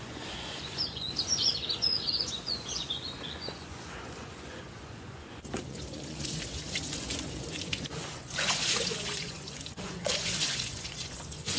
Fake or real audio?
fake